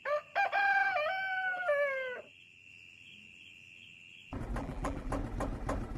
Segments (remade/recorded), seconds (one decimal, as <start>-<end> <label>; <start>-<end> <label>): 0.0-4.6 recorded; 4.6-5.1 remade; 5.1-6.0 recorded